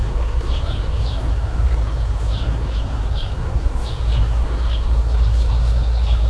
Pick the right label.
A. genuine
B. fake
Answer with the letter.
B